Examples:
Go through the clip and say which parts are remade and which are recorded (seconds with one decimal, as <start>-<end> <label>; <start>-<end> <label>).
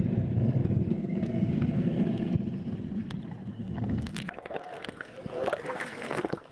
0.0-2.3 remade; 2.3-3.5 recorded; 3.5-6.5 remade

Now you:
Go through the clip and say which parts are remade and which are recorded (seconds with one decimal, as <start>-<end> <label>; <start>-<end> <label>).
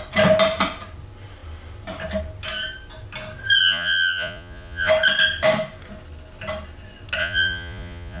0.0-3.6 recorded; 3.6-4.9 remade; 4.9-7.2 recorded; 7.2-8.2 remade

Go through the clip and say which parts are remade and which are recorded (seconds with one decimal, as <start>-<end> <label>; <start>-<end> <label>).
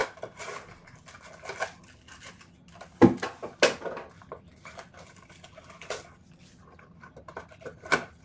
0.0-8.2 recorded